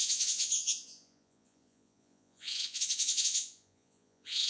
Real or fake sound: fake